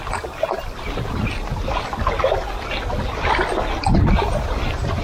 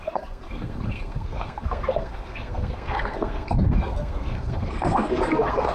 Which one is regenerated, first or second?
second